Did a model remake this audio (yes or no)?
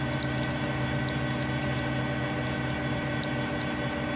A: no